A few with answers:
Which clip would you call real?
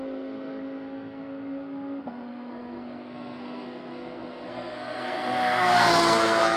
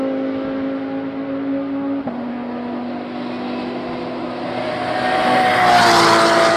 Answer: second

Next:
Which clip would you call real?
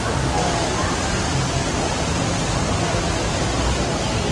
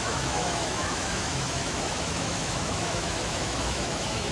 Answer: first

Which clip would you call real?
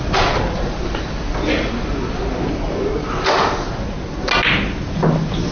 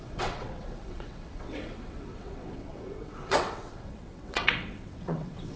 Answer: first